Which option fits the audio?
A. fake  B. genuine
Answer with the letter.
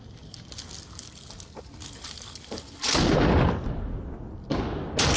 B